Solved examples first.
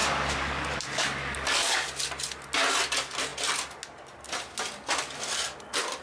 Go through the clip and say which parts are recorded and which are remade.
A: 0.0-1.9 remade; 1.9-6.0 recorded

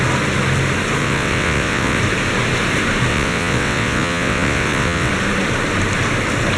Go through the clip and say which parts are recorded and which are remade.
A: 0.0-1.0 recorded; 1.0-2.0 remade; 2.0-3.1 recorded; 3.1-5.1 remade; 5.1-6.6 recorded

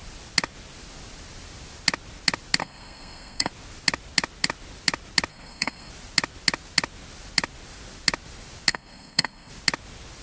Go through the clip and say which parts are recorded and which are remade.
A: 0.0-2.6 recorded; 2.6-3.5 remade; 3.5-5.3 recorded; 5.3-5.9 remade; 5.9-8.7 recorded; 8.7-9.5 remade; 9.5-10.2 recorded

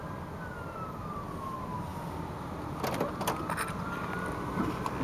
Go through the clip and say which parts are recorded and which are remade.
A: 0.0-5.0 recorded

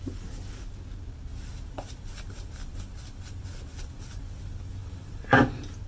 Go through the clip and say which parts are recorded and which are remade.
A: 0.0-4.8 recorded; 4.8-5.4 remade; 5.4-5.9 recorded

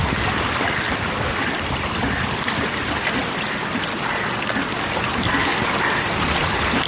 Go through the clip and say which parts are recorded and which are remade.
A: 0.0-6.9 recorded